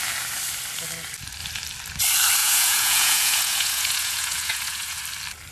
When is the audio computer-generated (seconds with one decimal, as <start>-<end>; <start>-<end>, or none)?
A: 2.4-5.0